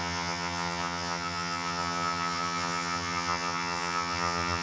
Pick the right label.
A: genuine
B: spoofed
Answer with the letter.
B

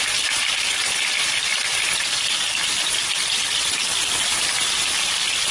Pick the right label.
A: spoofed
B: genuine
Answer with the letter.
B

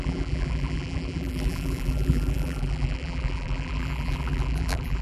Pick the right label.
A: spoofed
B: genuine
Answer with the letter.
A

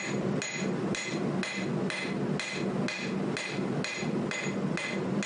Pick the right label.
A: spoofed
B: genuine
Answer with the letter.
B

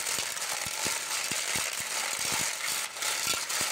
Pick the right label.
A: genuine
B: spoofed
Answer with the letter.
A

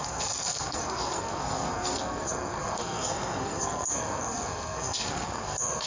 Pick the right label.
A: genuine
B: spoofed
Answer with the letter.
B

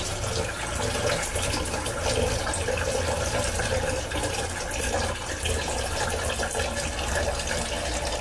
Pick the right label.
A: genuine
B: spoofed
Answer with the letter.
A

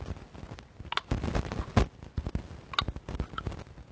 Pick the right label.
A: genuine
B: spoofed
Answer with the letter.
A